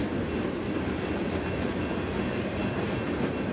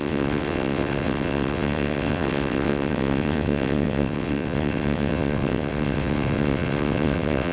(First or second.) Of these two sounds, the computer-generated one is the second